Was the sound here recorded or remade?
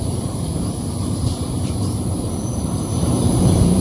remade